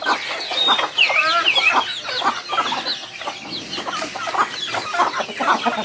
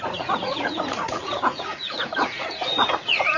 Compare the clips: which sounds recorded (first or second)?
first